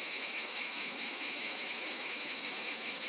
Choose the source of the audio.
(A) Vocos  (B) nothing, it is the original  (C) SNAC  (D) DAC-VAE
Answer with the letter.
D